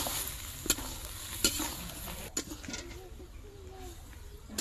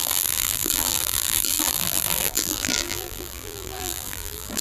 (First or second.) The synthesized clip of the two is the second